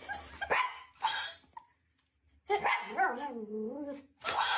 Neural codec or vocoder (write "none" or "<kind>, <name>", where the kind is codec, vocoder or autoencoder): none